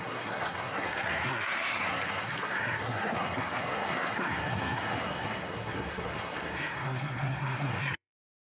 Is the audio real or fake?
fake